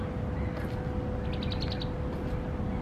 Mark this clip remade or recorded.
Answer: recorded